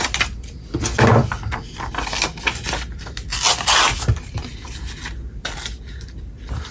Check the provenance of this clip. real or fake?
real